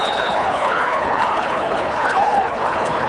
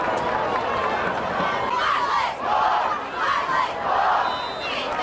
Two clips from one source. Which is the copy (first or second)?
first